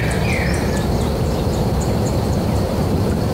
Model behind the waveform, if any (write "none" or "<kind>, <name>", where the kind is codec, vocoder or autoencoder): vocoder, BigVGAN v2